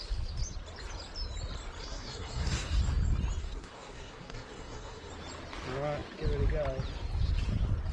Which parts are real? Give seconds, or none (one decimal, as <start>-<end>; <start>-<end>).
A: 0.0-1.8; 2.8-3.4; 5.1-7.9